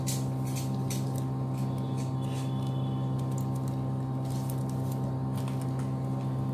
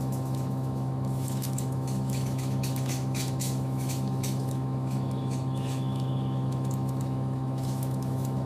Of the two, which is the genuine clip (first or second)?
first